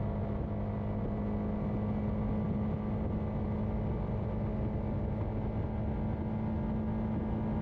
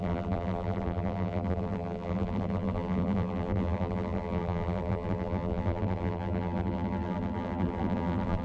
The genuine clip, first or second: first